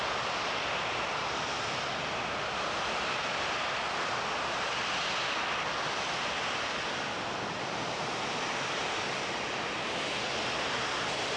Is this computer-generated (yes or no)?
no